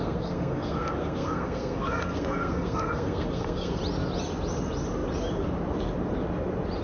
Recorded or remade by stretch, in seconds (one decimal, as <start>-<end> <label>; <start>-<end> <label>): 0.0-3.8 remade; 3.8-6.8 recorded